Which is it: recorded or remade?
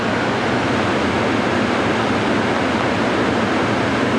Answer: recorded